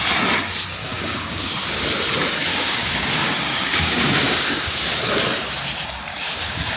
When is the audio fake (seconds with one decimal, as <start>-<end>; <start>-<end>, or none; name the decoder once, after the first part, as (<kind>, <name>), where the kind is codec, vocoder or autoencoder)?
0.8-1.5 (codec, DAC); 2.5-4.9; 6.1-6.8